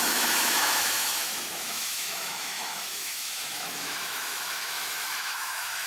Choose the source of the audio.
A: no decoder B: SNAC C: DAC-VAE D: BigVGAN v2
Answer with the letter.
C